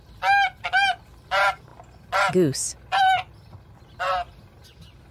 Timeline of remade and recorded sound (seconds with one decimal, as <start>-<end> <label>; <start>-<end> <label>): 0.0-5.1 recorded